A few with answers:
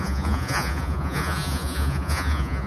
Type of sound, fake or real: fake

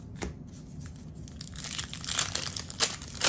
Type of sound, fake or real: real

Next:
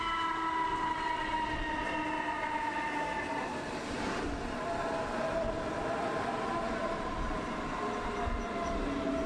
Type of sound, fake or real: real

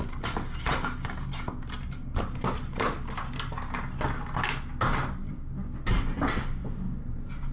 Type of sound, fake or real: real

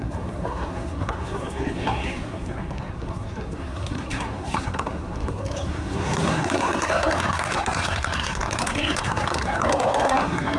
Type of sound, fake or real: fake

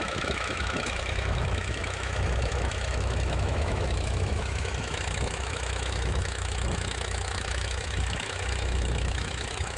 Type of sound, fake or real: fake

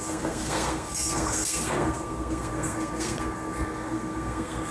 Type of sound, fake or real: fake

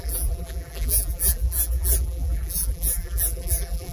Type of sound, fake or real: fake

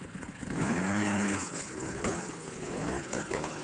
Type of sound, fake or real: fake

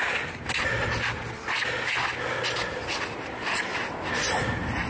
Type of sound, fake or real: real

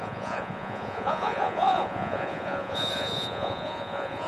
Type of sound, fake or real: fake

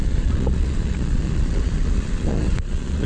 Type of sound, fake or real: fake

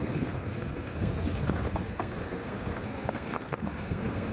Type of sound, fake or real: fake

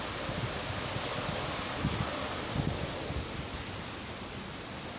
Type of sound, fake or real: real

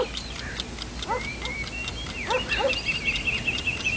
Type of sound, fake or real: real